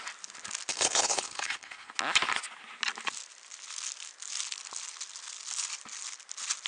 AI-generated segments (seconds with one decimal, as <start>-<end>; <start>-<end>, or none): 0.7-1.9